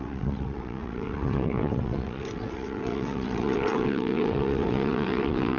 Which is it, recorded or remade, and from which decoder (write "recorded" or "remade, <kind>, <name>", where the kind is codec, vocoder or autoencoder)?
remade, vocoder, WaveNeXt